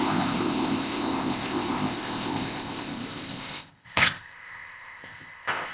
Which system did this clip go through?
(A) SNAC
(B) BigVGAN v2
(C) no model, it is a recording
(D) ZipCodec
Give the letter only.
D